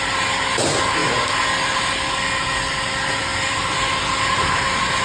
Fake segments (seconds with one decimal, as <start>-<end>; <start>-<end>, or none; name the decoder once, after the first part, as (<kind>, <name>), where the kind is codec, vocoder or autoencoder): 3.3-4.5 (vocoder, BigVGAN v2)